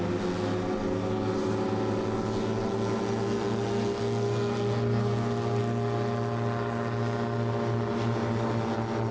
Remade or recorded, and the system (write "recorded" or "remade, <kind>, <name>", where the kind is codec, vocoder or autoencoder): recorded